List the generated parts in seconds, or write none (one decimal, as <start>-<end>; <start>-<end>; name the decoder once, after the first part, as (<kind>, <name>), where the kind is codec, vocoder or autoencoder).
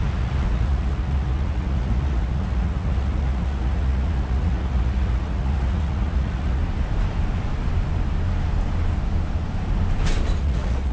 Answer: 0.0-6.6 (vocoder, Vocos); 10.4-10.9